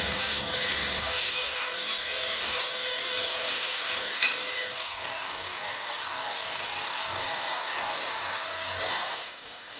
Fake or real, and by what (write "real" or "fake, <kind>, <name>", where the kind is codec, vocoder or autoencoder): fake, codec, DAC